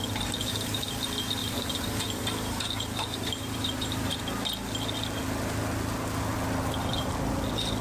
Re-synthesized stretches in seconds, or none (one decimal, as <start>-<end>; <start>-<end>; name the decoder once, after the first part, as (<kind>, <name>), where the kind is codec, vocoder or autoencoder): 1.4-4.2 (vocoder, BigVGAN v2)